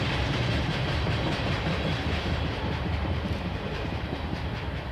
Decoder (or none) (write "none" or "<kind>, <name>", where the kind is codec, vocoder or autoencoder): vocoder, BigVGAN v2